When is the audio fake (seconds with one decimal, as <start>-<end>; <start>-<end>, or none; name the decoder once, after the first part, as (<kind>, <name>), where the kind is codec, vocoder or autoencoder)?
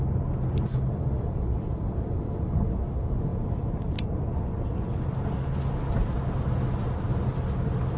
none